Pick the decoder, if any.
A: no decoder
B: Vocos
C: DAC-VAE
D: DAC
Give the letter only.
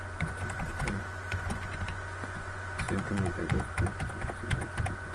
B